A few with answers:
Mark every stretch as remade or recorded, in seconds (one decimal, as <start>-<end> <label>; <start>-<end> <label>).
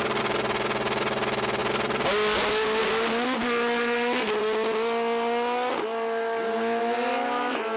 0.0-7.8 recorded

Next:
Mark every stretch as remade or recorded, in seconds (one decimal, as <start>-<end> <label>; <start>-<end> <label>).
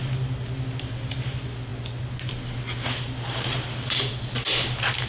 0.0-5.1 recorded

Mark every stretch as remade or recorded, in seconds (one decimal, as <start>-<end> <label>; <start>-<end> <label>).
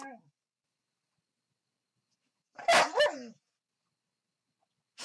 0.0-5.0 recorded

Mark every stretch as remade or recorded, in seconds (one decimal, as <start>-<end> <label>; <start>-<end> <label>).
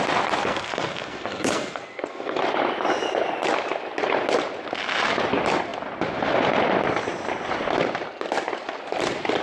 0.0-0.4 recorded; 0.4-2.4 remade; 2.4-9.4 recorded